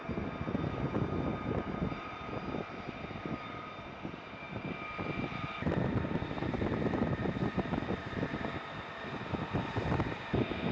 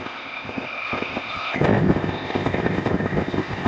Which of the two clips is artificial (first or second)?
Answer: second